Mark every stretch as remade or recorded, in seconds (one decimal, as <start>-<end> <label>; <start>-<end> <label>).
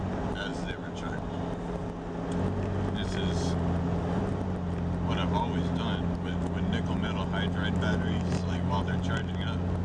0.0-9.8 recorded